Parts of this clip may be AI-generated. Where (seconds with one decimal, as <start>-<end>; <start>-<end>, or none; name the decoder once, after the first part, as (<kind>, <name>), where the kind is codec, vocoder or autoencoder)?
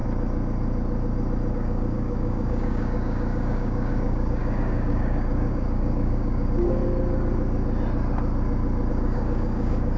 1.5-6.8 (codec, DAC); 8.9-10.0